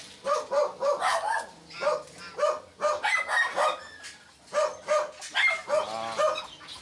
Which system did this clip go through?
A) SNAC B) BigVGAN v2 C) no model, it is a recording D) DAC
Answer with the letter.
C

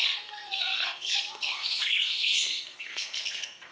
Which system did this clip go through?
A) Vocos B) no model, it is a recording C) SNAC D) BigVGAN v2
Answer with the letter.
C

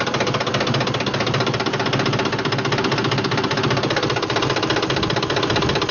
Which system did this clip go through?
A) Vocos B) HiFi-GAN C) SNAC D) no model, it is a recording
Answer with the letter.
D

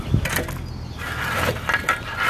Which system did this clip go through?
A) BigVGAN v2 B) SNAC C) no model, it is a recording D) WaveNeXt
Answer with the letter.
C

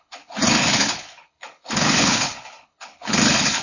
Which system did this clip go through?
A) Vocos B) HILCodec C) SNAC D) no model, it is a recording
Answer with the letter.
B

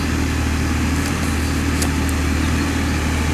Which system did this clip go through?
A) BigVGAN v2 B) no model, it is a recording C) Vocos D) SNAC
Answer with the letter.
B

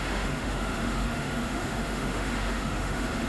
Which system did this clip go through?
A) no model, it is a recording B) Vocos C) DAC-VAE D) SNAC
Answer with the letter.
C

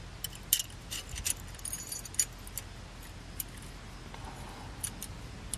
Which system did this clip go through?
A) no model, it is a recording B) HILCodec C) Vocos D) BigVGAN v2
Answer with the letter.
A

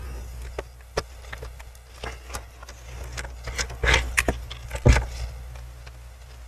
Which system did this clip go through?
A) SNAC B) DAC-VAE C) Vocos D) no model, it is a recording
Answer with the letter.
D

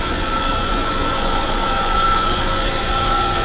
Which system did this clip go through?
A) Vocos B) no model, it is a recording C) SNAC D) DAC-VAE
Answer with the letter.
A